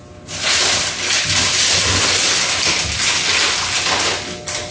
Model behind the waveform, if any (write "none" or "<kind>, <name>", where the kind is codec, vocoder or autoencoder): none